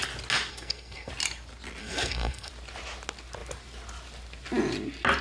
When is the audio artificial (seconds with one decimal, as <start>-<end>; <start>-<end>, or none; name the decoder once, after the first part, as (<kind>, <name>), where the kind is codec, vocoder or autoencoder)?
0.5-1.1 (codec, SNAC); 1.8-2.5